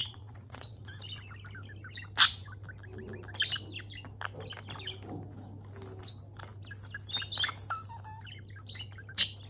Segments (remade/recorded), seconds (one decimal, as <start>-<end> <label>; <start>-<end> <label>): 0.0-0.9 remade; 0.9-9.5 recorded